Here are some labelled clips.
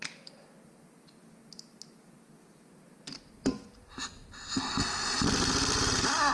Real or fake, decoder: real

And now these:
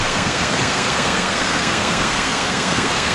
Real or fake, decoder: fake, codec, SNAC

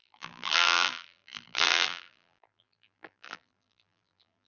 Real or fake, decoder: fake, vocoder, BigVGAN v2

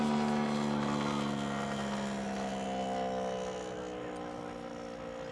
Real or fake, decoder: real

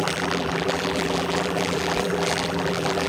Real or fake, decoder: fake, vocoder, BigVGAN v2